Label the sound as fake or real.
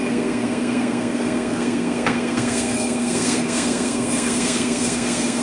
fake